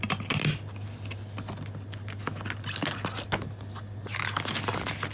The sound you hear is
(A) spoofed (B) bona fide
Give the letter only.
B